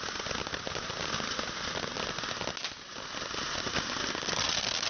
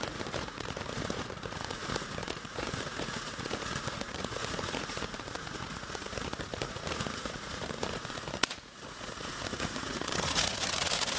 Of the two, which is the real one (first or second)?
first